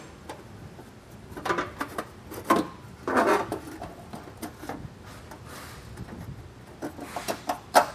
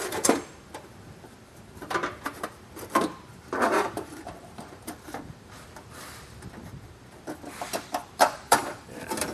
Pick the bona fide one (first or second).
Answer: first